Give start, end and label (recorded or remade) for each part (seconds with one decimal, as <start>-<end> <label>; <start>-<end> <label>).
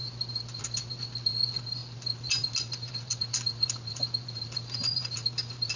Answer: 0.0-5.8 recorded